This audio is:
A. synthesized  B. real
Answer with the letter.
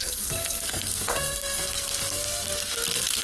A